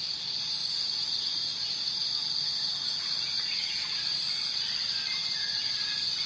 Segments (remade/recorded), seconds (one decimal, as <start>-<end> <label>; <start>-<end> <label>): 0.0-6.3 recorded